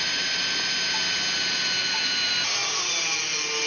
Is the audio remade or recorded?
recorded